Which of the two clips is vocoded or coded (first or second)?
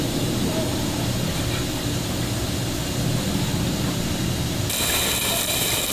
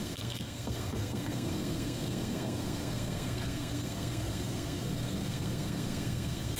second